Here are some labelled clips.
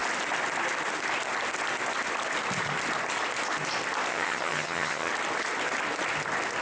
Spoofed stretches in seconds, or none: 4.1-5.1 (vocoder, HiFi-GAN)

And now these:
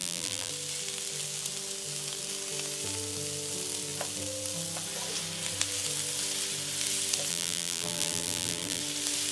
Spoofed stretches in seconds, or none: 0.0-0.5 (vocoder, BigVGAN v2); 7.3-8.8

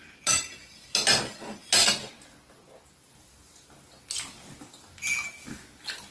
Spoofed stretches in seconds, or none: none

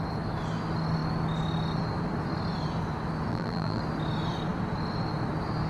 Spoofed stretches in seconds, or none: 3.3-3.8 (vocoder, BigVGAN v2)

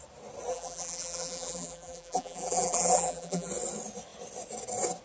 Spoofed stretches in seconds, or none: 0.5-3.5 (vocoder, BigVGAN v2)